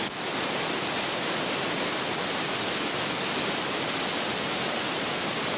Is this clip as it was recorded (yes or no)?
yes